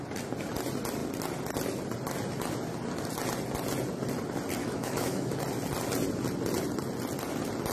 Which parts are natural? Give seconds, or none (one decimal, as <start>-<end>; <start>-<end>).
0.0-4.6; 5.4-7.7